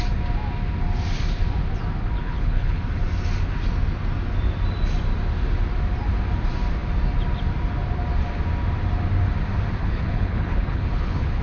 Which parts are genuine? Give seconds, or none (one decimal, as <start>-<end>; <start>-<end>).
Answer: 0.0-2.2; 2.8-9.8